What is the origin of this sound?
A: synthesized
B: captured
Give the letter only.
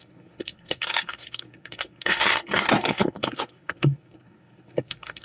A